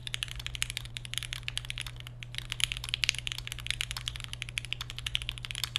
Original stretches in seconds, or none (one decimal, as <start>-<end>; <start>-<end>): 0.0-5.8